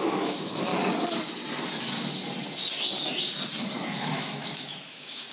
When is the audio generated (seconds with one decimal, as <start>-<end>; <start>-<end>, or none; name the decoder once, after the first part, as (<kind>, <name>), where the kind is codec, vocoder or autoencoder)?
0.0-0.7 (autoencoder, DAC-VAE); 3.9-5.3